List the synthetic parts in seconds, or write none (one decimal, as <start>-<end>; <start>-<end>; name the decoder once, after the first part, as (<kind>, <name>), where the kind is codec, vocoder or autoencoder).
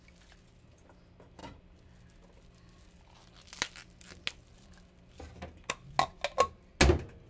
none